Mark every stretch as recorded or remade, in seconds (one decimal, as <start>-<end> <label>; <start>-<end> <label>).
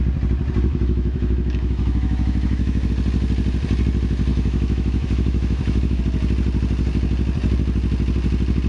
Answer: 0.0-0.7 recorded; 0.7-2.9 remade; 2.9-4.3 recorded; 4.3-6.0 remade; 6.0-8.7 recorded